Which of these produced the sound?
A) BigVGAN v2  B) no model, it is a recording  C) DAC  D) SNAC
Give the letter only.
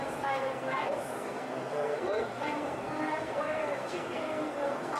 D